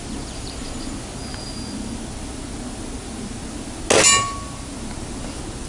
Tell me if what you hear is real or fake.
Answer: real